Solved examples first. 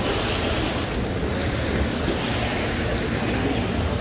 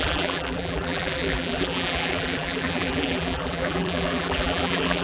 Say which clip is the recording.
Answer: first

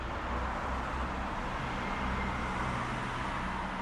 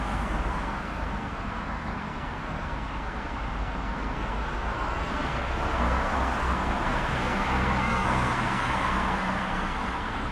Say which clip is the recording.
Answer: first